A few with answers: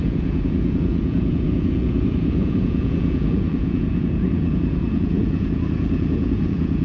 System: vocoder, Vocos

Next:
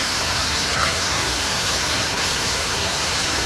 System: codec, SNAC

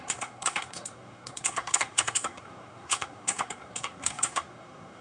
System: codec, SNAC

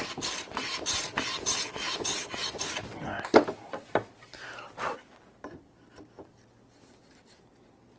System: none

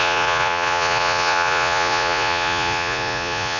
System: vocoder, Vocos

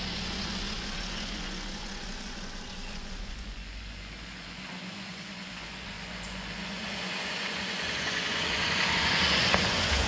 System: vocoder, Vocos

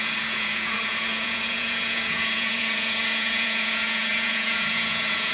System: vocoder, Vocos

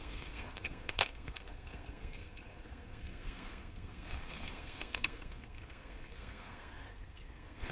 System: codec, SNAC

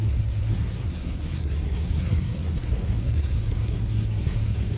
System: codec, SNAC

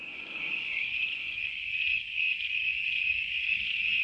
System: vocoder, Vocos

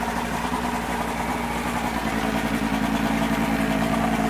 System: none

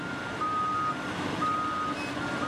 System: none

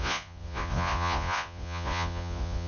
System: vocoder, Vocos